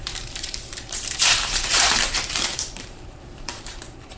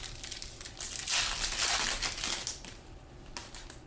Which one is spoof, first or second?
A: first